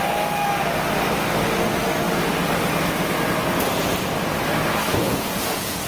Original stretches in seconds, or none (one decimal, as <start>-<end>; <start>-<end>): 0.0-4.9